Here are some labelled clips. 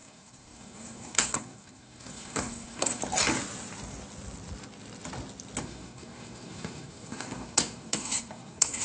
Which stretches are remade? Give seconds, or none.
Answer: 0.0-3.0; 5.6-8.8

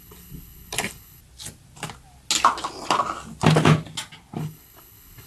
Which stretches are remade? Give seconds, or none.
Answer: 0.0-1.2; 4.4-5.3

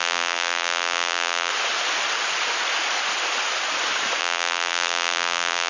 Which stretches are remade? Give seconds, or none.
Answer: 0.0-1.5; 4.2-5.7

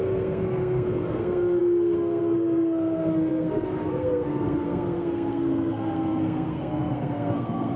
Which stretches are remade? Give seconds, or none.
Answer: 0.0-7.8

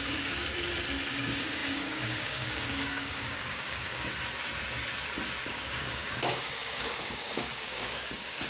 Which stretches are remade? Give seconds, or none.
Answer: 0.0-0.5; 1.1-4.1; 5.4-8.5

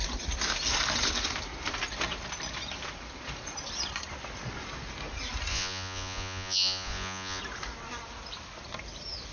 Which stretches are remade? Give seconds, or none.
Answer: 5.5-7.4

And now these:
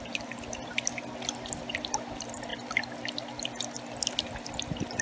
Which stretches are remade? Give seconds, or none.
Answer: 0.0-0.7; 1.7-2.5; 4.1-5.0